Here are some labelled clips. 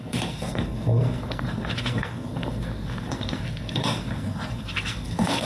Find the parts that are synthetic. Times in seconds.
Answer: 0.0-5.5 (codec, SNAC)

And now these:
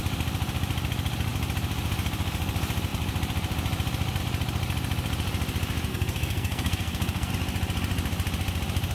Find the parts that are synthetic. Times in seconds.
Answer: 5.9-7.3 (codec, SNAC)

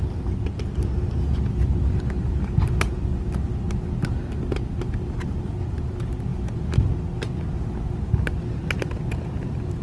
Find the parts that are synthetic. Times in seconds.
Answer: none

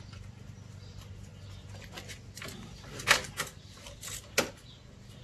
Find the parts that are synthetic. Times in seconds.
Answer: none

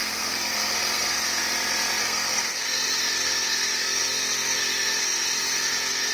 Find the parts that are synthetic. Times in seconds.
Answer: 0.0-1.4 (codec, SNAC); 2.0-6.1

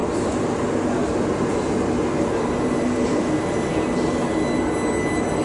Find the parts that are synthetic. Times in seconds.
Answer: none